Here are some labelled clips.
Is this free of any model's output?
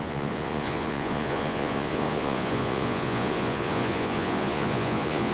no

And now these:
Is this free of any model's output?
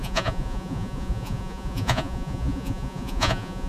no